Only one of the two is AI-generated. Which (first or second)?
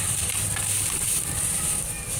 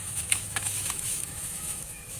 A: second